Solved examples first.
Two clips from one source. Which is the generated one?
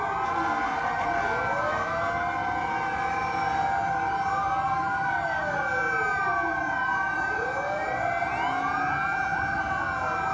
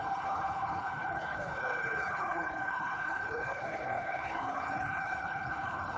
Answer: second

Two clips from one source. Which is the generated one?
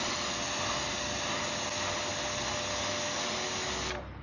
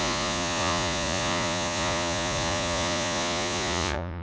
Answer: second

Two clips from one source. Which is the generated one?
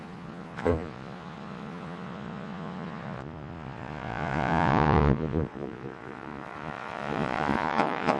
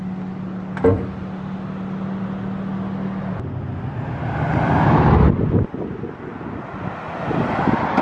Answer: first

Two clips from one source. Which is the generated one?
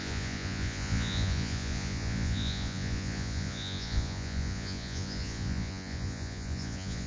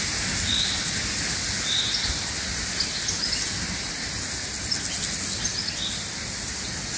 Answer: first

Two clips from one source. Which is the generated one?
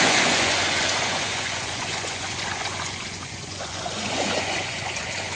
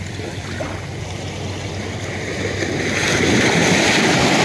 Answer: first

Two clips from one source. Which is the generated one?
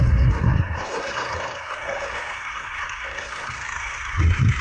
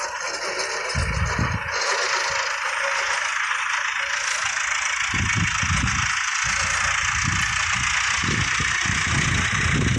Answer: first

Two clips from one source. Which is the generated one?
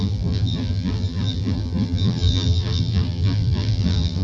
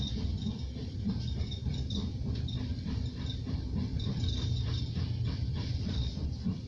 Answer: first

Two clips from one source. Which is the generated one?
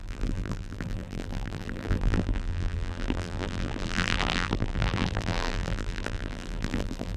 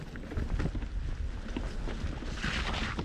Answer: first